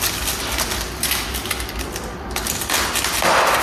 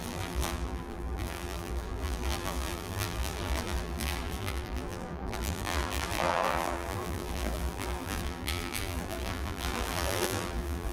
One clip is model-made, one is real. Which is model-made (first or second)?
second